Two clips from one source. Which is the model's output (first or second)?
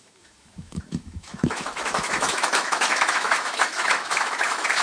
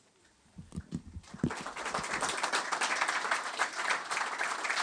first